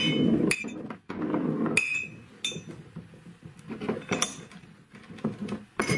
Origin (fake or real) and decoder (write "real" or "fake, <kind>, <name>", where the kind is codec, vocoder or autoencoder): real